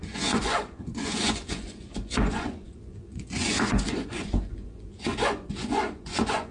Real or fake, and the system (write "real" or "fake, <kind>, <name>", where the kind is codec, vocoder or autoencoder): fake, vocoder, Vocos